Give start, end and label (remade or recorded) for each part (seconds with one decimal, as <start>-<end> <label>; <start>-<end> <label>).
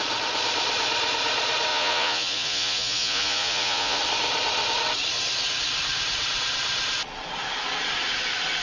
0.0-1.7 recorded; 1.7-4.0 remade; 4.0-8.6 recorded